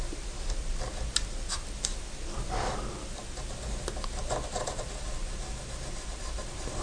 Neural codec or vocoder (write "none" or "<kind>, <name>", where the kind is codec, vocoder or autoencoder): none